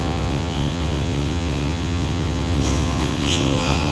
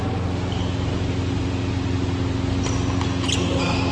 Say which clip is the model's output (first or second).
first